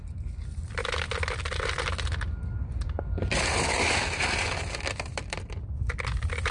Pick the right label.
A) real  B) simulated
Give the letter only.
B